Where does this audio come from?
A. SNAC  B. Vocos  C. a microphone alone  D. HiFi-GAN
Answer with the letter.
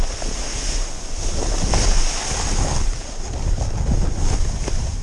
C